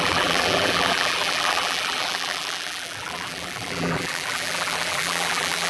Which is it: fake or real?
fake